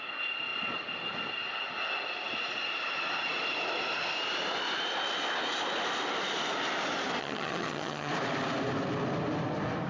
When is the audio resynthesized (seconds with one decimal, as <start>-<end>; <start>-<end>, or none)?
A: 7.2-8.1